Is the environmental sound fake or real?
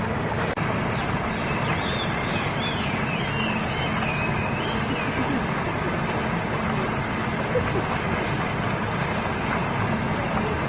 real